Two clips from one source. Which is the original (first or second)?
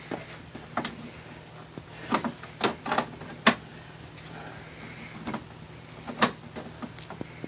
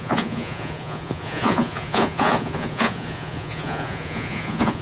first